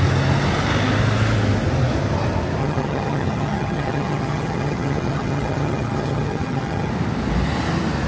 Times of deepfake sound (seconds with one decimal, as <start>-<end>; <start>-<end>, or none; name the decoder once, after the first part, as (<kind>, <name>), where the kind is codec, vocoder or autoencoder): 2.6-6.9 (vocoder, HiFi-GAN)